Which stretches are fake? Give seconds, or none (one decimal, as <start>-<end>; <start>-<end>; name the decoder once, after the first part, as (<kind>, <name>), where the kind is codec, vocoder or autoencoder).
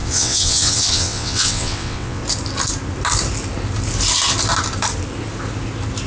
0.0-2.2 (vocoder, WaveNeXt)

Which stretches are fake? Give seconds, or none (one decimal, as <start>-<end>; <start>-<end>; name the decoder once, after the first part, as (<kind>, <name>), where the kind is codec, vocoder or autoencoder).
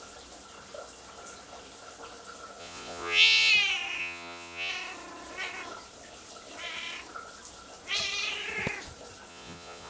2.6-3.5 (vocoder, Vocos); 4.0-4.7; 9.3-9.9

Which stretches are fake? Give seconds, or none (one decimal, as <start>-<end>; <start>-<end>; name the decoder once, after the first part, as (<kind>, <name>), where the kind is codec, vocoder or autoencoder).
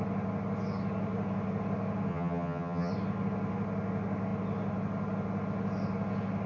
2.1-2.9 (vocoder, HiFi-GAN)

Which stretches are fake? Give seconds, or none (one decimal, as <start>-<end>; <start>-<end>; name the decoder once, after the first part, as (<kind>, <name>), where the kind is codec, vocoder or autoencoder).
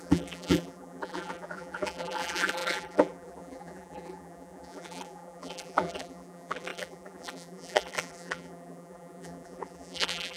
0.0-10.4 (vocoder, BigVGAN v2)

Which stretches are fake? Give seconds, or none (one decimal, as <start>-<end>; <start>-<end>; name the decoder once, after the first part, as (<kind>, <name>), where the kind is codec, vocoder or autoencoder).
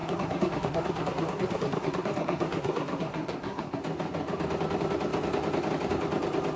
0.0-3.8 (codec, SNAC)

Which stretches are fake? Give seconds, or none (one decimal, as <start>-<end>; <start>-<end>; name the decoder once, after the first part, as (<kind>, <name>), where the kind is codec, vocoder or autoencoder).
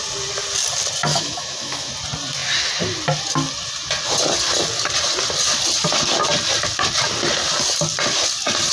1.1-1.9 (autoencoder, DAC-VAE)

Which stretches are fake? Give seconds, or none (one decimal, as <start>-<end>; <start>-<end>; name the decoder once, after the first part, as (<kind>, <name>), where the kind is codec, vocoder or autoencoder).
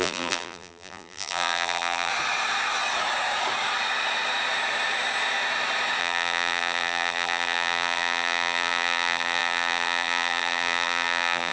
0.0-2.1 (vocoder, BigVGAN v2); 6.0-11.5